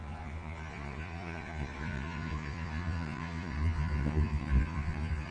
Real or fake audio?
fake